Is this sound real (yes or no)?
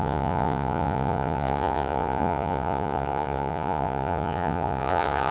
no